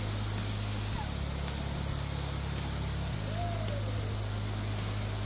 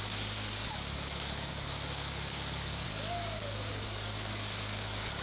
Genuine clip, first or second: first